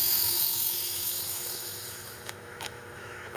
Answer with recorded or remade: remade